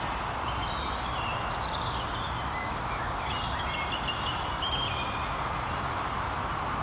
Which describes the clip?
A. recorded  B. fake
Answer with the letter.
A